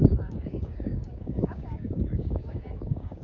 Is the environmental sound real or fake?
fake